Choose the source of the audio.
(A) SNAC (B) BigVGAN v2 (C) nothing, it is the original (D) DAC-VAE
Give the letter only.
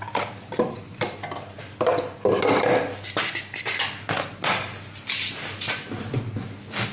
C